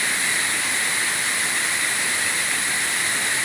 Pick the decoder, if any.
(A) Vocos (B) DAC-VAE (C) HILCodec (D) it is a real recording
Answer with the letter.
D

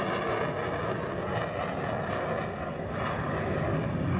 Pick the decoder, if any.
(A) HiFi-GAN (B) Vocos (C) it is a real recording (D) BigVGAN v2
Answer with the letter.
C